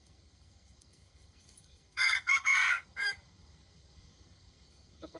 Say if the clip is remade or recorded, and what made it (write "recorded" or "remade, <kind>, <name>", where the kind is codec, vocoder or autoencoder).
remade, codec, SNAC